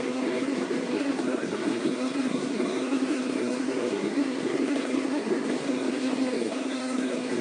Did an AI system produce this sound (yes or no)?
yes